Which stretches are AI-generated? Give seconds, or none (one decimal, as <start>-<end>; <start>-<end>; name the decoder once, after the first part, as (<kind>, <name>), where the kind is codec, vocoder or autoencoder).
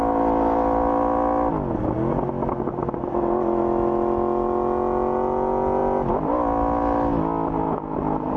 none